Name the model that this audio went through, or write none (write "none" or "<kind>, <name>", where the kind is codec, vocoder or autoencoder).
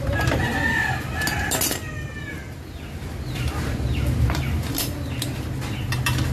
none